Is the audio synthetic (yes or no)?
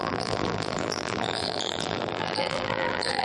yes